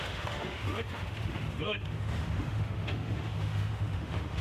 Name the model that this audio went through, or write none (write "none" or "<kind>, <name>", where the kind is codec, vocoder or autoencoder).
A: autoencoder, DAC-VAE